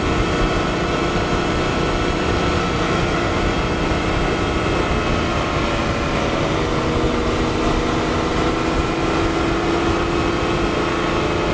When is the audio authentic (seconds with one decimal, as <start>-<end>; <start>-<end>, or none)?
0.0-2.6; 3.4-11.5